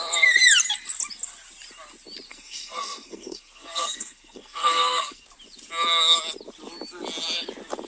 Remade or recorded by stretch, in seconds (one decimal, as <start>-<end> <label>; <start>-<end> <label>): 0.0-2.3 recorded; 2.3-5.2 remade; 5.2-7.9 recorded